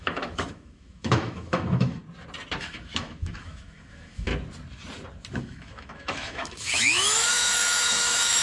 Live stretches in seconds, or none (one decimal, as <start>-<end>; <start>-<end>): 2.0-2.6; 4.3-5.4